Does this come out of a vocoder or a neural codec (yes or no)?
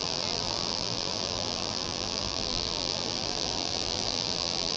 yes